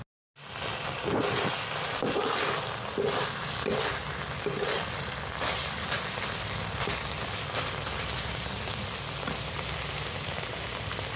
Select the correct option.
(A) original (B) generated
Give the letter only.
A